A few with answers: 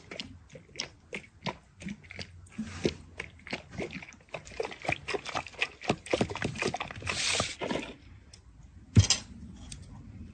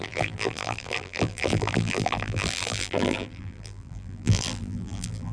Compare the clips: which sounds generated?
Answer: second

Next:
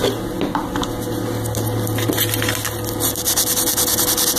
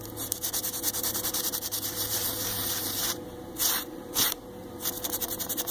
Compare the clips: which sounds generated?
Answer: second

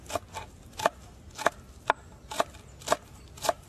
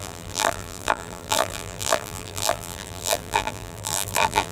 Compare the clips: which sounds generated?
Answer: second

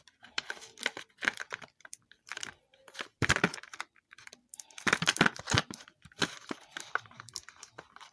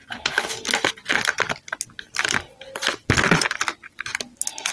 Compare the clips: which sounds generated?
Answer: first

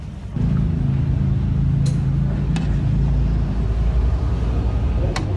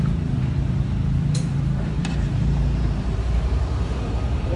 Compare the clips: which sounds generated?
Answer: second